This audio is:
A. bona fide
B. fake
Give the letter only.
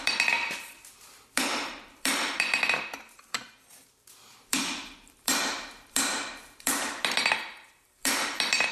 B